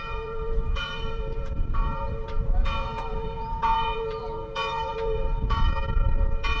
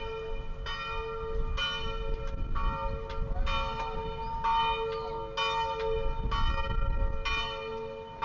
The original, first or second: second